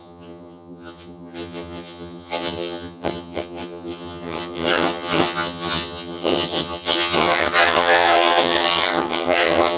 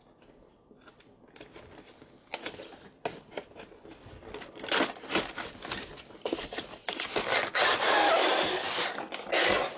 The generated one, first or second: first